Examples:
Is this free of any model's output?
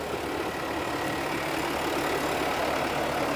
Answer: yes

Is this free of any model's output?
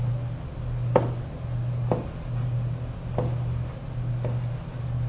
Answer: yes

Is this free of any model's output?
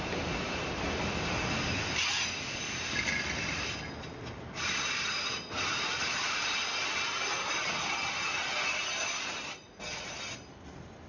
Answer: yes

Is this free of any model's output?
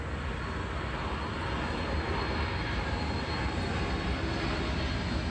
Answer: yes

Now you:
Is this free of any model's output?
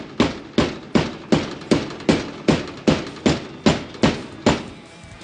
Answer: yes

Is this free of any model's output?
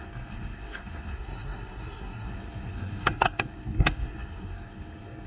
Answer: no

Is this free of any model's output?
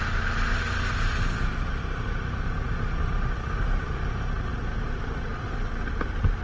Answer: yes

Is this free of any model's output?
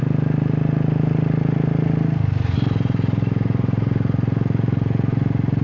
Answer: yes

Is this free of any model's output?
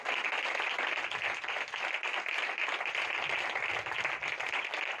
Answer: yes